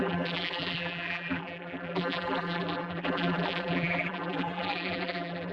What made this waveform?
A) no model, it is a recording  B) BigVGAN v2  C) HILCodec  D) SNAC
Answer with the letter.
B